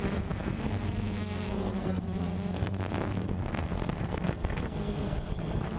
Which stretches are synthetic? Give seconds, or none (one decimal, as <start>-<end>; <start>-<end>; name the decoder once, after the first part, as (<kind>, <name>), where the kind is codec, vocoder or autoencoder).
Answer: 0.0-5.8 (codec, SNAC)